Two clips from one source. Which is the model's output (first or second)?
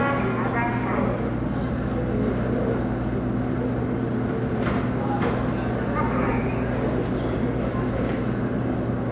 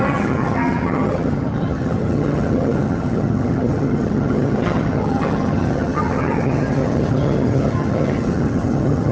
second